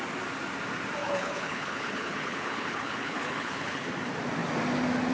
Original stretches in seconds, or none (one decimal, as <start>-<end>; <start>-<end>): 0.0-1.0; 3.9-5.1